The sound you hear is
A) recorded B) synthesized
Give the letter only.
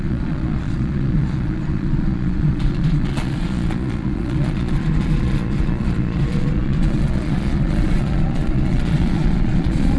B